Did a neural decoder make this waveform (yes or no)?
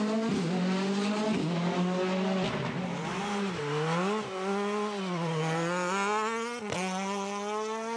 no